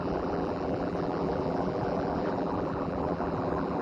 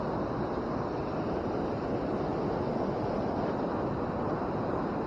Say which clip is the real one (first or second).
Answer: second